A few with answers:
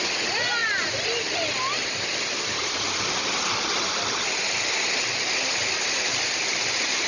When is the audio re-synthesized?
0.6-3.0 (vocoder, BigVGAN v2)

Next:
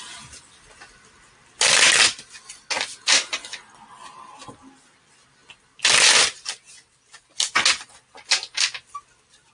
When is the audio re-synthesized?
none

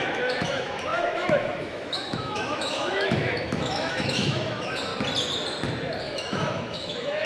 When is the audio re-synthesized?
0.0-4.9 (autoencoder, DAC-VAE); 6.0-7.3